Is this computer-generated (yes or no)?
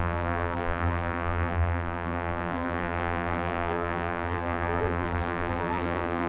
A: yes